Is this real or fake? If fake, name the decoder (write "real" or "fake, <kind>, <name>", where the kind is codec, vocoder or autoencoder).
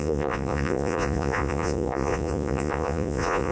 fake, vocoder, Vocos